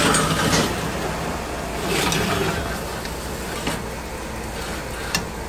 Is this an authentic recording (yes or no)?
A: yes